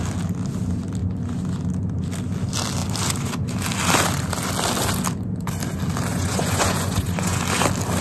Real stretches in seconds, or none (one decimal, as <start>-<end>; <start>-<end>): 0.0-6.1; 7.4-8.0